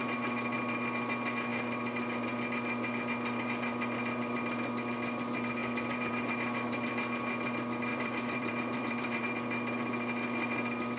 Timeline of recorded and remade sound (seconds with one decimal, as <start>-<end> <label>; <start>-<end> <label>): 0.0-5.6 recorded; 5.6-6.2 remade; 6.2-7.9 recorded; 7.9-9.2 remade; 9.2-11.0 recorded